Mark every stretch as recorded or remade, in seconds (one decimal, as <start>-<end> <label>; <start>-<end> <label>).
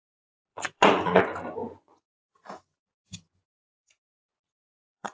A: 0.0-0.5 recorded; 0.5-1.2 remade; 1.2-1.6 recorded; 1.6-5.1 remade